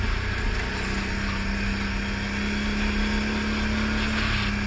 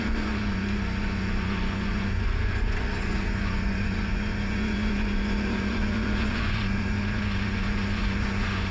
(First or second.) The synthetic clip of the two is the second